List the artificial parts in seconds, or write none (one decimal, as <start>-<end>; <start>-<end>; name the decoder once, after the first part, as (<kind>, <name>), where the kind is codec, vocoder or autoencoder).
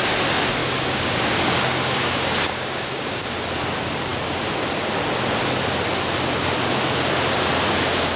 0.6-3.2 (codec, DAC)